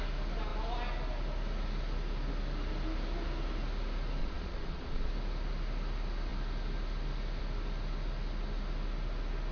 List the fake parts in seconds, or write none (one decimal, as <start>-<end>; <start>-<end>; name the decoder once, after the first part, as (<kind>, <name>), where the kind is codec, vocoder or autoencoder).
4.2-5.1 (vocoder, Vocos)